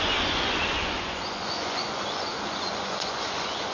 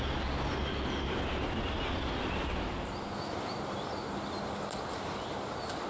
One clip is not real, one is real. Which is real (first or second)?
second